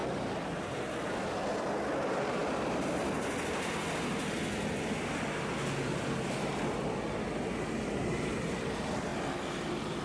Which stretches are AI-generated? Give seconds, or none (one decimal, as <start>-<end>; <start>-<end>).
none